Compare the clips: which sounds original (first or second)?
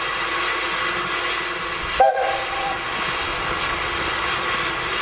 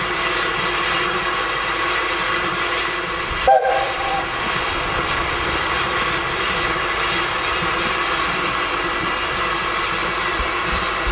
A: first